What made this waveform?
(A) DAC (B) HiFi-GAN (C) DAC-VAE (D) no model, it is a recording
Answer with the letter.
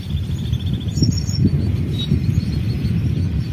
D